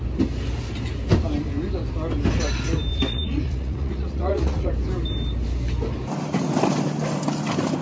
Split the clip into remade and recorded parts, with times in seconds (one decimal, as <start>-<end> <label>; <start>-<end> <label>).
0.0-2.9 recorded; 2.9-4.7 remade; 4.7-7.8 recorded